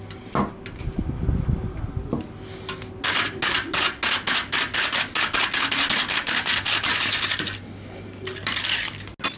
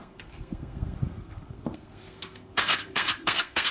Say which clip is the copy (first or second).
second